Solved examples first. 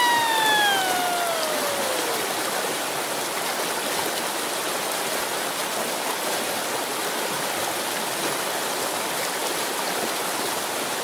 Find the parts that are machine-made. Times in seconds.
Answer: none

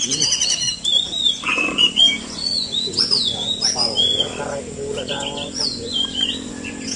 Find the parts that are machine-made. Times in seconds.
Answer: 0.0-4.3 (vocoder, Vocos); 5.1-7.0

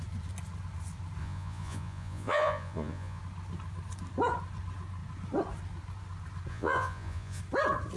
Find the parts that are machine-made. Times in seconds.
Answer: 1.2-3.2 (vocoder, Vocos); 6.5-7.4

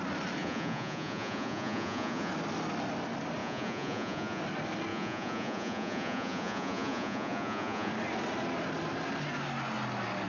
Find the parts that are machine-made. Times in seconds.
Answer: 0.4-2.3 (vocoder, Vocos); 3.4-4.4; 4.9-7.9